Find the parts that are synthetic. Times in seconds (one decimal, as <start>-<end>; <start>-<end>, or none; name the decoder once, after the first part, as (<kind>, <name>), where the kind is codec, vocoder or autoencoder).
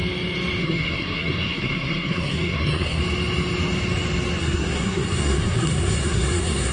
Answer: 0.6-3.0 (codec, SNAC); 4.4-6.7